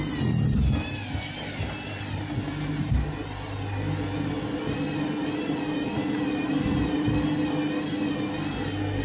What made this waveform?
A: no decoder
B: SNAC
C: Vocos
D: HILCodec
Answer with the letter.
A